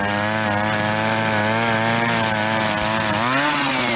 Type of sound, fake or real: real